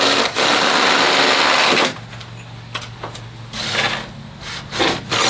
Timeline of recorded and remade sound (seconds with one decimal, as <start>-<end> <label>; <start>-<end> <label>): 0.0-5.3 recorded